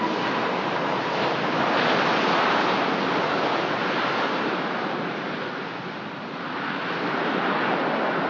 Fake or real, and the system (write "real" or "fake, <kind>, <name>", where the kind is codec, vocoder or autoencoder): real